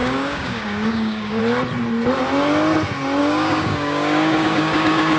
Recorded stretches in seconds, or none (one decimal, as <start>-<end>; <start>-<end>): 1.4-3.2